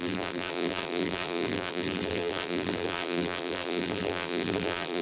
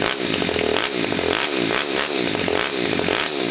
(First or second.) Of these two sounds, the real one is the second